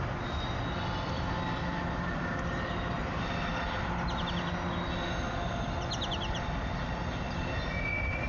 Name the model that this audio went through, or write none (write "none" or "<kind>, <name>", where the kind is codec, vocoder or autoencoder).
none